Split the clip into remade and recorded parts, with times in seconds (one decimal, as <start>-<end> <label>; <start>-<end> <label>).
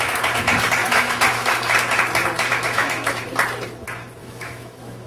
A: 0.0-0.8 recorded; 0.8-1.8 remade; 1.8-2.5 recorded; 2.5-3.2 remade; 3.2-4.2 recorded; 4.2-5.1 remade